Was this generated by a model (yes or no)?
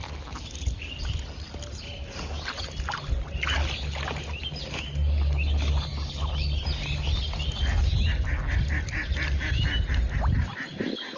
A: no